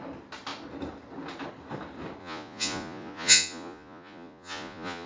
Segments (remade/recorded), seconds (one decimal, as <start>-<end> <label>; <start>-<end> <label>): 0.0-2.2 recorded; 2.2-5.1 remade